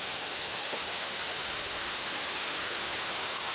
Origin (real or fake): fake